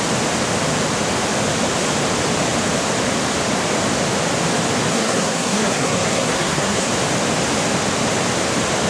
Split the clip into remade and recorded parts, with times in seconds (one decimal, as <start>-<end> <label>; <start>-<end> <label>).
0.0-4.9 recorded; 4.9-6.9 remade; 6.9-8.9 recorded